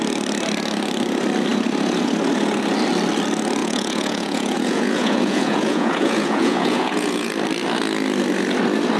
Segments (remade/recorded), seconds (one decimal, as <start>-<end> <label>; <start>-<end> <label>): 0.0-3.6 recorded; 3.6-7.3 remade; 7.3-9.0 recorded